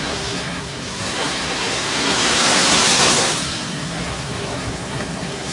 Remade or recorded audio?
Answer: remade